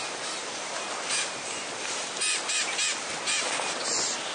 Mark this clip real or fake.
real